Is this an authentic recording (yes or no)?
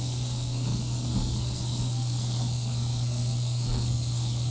no